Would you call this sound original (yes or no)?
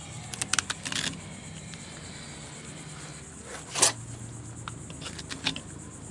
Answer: yes